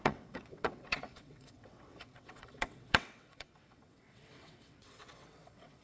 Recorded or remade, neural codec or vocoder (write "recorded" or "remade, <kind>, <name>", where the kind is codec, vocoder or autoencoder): remade, vocoder, WaveNeXt